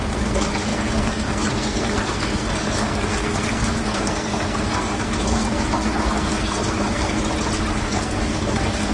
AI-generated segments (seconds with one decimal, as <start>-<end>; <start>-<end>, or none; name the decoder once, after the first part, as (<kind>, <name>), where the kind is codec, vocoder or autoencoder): 0.0-7.2 (codec, SNAC); 7.7-8.9